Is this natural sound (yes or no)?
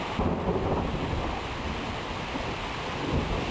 yes